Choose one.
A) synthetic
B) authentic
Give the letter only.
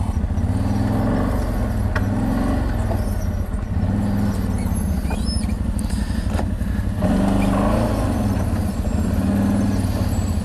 B